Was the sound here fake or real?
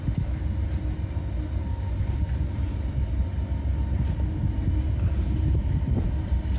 real